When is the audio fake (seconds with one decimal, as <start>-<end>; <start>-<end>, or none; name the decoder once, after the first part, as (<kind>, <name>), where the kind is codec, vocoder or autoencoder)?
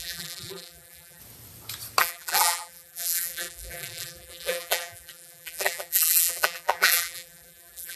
0.0-1.2 (vocoder, BigVGAN v2); 2.0-8.0